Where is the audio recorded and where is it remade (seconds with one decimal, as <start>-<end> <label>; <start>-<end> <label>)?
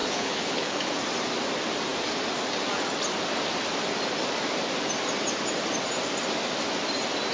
0.0-0.9 remade; 0.9-7.3 recorded